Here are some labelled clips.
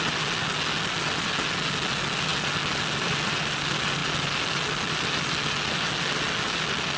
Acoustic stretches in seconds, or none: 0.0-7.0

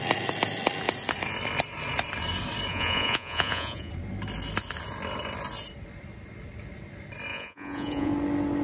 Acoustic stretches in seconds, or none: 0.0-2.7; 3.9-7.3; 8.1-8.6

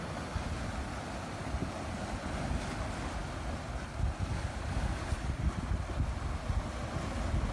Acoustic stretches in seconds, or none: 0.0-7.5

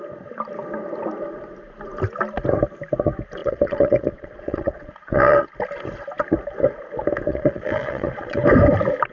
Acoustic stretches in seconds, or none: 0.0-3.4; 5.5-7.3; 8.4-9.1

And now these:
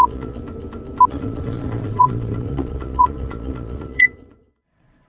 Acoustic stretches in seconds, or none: 0.4-1.1

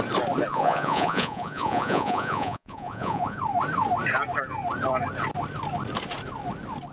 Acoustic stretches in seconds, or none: 0.0-0.5; 3.4-6.9